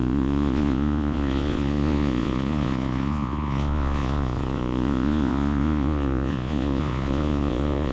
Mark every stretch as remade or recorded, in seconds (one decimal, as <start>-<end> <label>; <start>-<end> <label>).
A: 0.0-7.9 remade